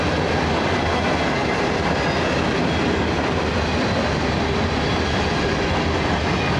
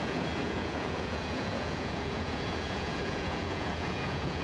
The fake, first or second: second